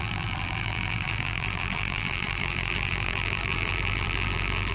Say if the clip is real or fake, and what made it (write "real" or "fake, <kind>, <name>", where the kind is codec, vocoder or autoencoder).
fake, vocoder, BigVGAN v2